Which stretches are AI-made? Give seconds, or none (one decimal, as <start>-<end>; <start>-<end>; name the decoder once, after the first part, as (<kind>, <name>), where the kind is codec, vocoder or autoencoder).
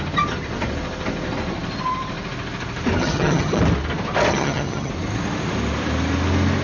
3.0-3.6 (vocoder, HiFi-GAN); 4.3-4.9